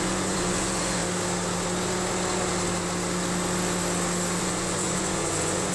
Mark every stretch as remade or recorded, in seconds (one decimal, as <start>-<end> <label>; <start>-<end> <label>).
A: 0.0-1.0 remade; 1.0-4.4 recorded; 4.4-5.7 remade